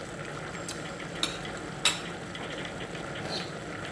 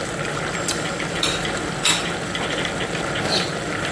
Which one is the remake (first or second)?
second